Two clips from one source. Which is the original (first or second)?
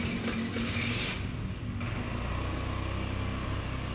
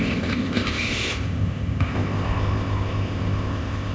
first